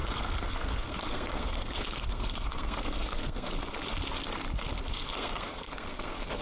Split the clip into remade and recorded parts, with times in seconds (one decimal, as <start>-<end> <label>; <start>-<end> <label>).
0.0-3.5 remade; 3.5-4.9 recorded; 4.9-6.4 remade